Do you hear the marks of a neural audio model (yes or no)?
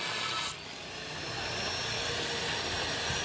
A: no